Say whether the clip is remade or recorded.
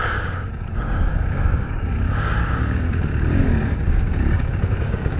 remade